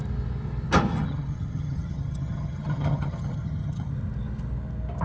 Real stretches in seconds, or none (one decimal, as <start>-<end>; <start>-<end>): 0.0-0.9; 3.9-5.0